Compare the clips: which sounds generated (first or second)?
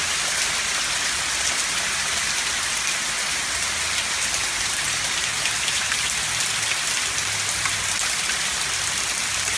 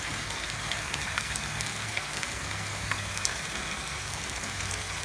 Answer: second